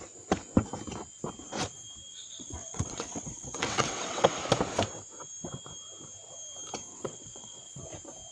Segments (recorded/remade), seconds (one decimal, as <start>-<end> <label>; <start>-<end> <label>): 0.0-2.1 recorded; 2.1-4.4 remade; 4.4-6.9 recorded; 6.9-7.8 remade; 7.8-8.3 recorded